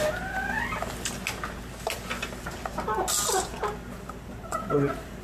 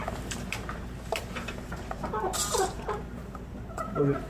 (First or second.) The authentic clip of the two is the first